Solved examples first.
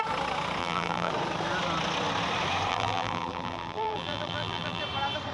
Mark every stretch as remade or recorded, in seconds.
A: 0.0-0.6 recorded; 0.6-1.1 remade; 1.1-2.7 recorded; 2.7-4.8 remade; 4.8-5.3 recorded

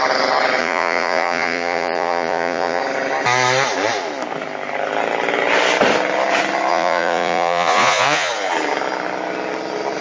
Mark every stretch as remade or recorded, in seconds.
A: 0.0-0.6 recorded; 0.6-2.8 remade; 2.8-6.7 recorded; 6.7-8.3 remade; 8.3-10.0 recorded

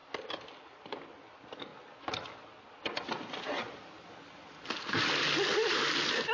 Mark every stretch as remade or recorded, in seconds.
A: 0.0-1.0 remade; 1.0-6.3 recorded

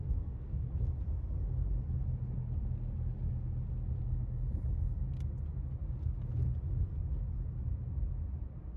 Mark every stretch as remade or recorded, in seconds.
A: 0.0-0.7 remade; 0.7-8.8 recorded